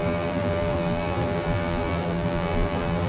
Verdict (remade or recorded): remade